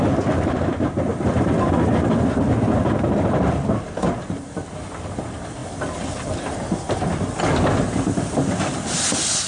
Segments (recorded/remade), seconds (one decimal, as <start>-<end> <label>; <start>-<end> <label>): 0.0-1.1 recorded; 1.1-1.7 remade; 1.7-9.5 recorded